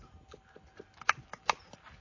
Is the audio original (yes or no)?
yes